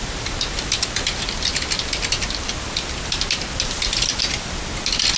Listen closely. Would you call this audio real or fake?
real